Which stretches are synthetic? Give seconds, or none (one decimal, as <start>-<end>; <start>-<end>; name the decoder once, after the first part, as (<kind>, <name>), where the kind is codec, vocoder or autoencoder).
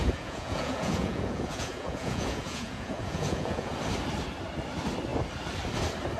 0.0-3.7 (vocoder, Vocos)